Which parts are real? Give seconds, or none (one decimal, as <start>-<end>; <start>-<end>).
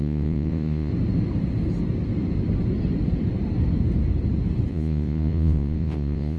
0.9-4.7